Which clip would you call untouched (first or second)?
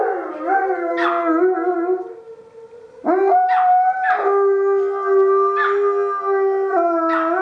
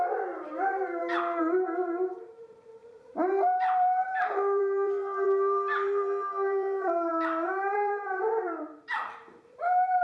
first